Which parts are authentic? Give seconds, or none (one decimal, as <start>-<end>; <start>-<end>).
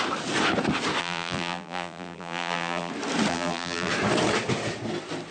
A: 0.0-1.0; 2.9-3.3; 3.9-5.3